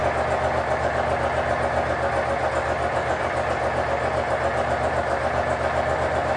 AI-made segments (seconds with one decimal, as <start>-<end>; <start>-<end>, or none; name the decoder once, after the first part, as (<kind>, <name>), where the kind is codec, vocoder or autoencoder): none